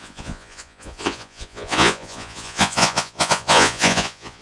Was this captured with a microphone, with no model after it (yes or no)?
no